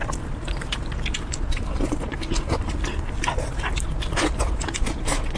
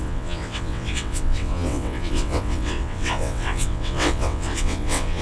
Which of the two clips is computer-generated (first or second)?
second